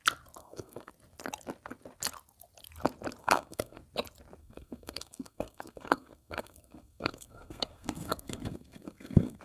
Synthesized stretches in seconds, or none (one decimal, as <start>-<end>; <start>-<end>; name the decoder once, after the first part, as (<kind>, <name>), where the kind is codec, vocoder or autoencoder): 0.4-0.9 (codec, SNAC); 3.2-3.8; 4.4-9.4